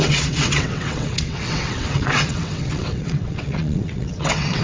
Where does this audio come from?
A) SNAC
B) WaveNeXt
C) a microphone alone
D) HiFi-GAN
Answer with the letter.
B